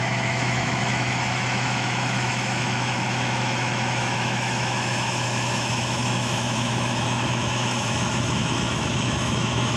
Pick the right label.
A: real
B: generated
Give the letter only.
B